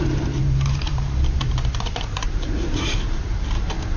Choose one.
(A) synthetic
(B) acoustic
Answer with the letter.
A